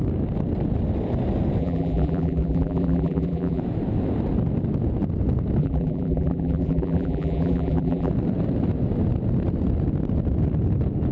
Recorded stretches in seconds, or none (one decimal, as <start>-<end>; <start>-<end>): 0.0-1.6; 3.6-5.6; 8.1-11.1